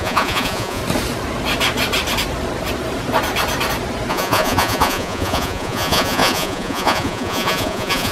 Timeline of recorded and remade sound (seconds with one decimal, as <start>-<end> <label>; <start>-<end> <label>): 0.0-0.8 remade; 0.8-4.1 recorded; 4.1-8.1 remade